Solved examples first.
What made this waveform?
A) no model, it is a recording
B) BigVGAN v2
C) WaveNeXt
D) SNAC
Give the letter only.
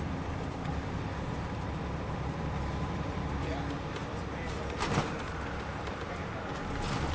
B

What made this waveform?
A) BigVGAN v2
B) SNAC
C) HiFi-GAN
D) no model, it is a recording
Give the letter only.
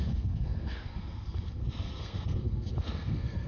B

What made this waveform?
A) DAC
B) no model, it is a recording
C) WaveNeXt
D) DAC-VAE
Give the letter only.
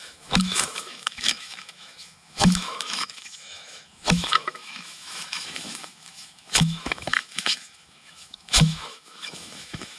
D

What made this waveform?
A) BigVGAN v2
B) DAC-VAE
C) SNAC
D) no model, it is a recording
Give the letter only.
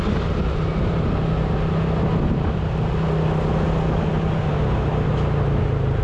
D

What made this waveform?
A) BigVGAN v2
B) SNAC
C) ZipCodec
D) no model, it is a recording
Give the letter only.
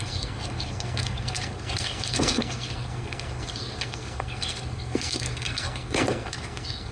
B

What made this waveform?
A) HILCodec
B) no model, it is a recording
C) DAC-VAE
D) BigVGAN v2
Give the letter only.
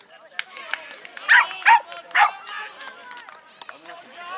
B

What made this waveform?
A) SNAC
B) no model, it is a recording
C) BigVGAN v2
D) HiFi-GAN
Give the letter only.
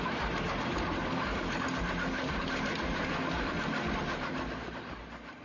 B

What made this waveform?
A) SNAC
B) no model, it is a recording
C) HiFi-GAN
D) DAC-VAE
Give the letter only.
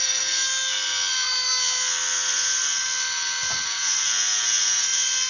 B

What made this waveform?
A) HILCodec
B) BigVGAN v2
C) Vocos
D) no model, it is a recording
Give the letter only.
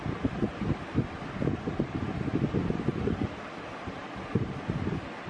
D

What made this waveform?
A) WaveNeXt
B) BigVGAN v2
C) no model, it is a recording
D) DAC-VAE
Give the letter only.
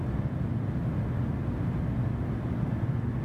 C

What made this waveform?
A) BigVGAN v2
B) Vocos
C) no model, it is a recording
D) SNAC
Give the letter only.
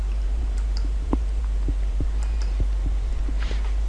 A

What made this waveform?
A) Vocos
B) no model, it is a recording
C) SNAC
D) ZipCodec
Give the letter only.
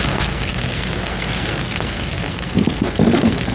C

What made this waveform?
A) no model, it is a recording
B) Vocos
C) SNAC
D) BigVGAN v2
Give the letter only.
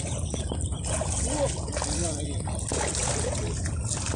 A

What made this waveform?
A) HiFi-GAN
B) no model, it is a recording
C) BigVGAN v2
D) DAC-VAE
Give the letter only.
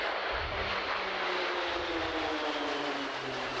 B